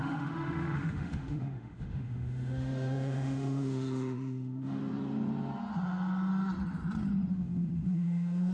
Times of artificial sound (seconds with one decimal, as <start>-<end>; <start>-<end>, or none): 0.0-4.8; 7.3-8.5